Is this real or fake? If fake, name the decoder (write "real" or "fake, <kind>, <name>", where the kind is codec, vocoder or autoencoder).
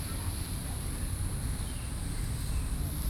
fake, vocoder, BigVGAN v2